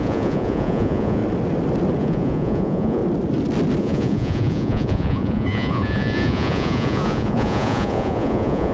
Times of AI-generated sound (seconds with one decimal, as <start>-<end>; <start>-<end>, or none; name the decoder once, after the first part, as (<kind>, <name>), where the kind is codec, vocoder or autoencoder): 0.0-1.2 (vocoder, Vocos); 2.0-3.0; 3.8-8.7